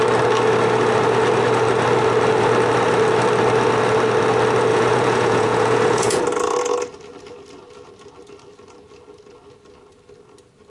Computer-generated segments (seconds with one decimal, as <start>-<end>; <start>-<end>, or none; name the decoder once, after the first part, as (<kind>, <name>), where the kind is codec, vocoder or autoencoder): 4.7-6.2 (vocoder, Vocos)